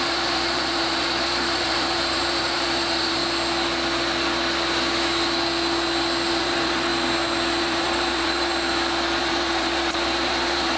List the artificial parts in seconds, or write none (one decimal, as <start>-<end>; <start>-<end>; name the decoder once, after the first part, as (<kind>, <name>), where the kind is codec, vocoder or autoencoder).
0.0-3.2 (vocoder, BigVGAN v2); 6.3-6.9; 7.6-8.5; 9.2-10.8